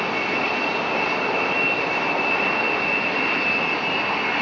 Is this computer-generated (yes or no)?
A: no